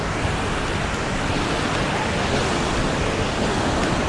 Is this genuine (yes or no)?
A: yes